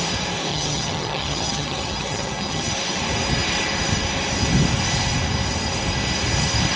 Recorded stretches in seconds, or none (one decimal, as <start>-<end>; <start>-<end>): 0.0-0.5; 2.7-6.8